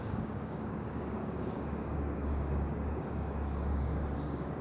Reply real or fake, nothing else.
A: fake